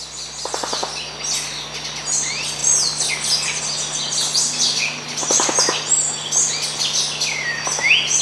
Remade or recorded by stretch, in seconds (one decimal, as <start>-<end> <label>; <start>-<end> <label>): 0.0-8.2 recorded